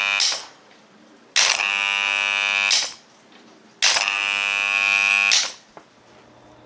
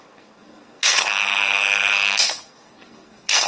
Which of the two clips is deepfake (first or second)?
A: second